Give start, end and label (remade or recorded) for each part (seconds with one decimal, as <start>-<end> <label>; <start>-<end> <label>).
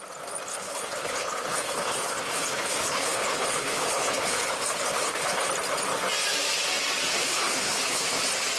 0.0-0.5 recorded; 0.5-5.5 remade; 5.5-7.2 recorded; 7.2-8.2 remade; 8.2-8.6 recorded